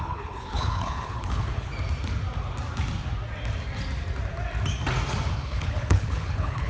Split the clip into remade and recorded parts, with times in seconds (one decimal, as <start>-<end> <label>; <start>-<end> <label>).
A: 0.0-1.7 remade; 1.7-5.3 recorded; 5.3-6.7 remade